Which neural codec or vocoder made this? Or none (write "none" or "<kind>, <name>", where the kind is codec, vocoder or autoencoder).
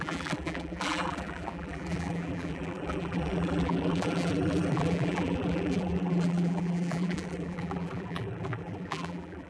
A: vocoder, BigVGAN v2